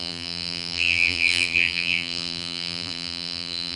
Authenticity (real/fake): fake